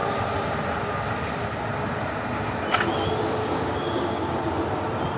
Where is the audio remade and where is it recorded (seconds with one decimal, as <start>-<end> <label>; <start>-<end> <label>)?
0.0-3.4 recorded; 3.4-4.4 remade; 4.4-5.2 recorded